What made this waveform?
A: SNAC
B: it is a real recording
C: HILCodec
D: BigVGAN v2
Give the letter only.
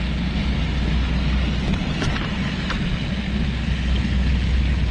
B